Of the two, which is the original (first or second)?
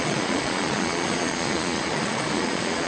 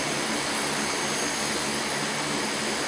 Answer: second